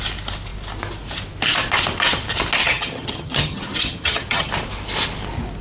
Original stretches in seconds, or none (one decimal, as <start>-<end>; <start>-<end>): 0.0-2.6; 4.5-5.6